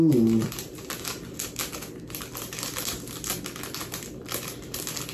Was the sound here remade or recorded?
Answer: recorded